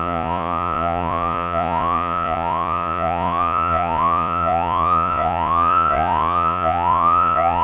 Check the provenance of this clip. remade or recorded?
remade